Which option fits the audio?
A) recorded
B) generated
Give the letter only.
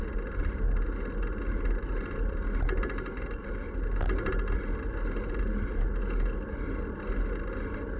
A